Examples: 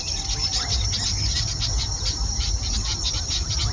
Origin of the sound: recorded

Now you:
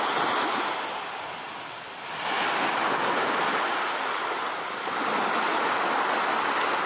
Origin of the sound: recorded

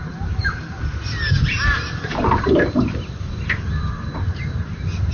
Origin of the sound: recorded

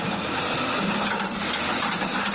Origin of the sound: recorded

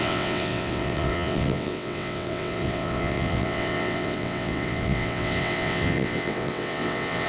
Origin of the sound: remade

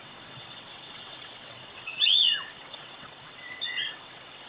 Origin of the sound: remade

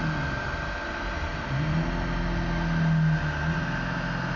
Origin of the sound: recorded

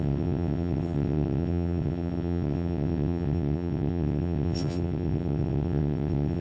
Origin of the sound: remade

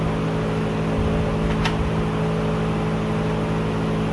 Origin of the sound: recorded